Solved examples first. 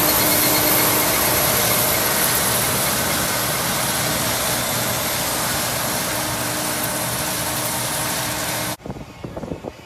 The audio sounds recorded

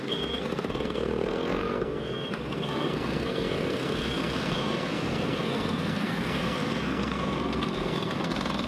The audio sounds remade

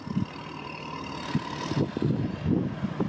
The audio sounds recorded